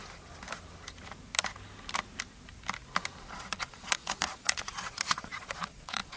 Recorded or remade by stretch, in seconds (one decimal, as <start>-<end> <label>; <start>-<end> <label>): 0.0-3.3 recorded; 3.3-6.2 remade